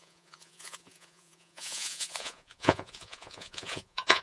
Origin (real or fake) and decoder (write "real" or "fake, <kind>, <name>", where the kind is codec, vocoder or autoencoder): fake, vocoder, Vocos